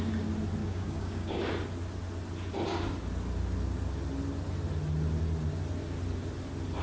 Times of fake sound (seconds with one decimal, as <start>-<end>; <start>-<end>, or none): 0.6-1.4